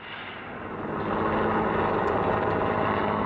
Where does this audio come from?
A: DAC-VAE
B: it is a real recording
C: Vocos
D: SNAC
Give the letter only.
B